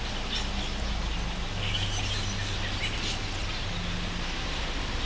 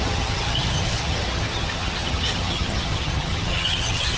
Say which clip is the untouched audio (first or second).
first